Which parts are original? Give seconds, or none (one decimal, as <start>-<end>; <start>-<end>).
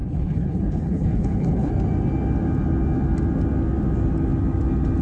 1.7-5.0